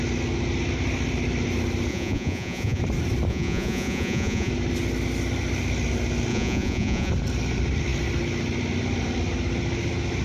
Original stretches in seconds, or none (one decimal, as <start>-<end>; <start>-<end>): 0.0-1.9; 2.8-3.3; 4.5-6.3; 7.1-10.2